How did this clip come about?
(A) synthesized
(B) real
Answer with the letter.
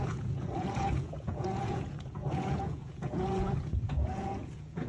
A